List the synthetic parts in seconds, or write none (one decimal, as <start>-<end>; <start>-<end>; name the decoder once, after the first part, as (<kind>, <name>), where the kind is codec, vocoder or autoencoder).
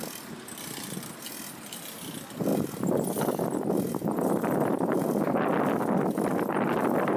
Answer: none